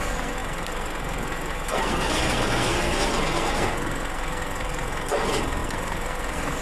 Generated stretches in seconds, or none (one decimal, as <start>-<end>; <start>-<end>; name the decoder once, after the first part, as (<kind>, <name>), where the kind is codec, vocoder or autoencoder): 0.0-6.6 (codec, SNAC)